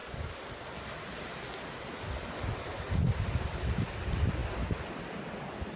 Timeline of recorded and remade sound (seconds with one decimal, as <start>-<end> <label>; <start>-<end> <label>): 0.0-5.8 recorded